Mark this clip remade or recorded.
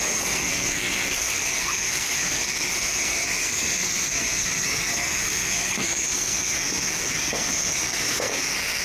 remade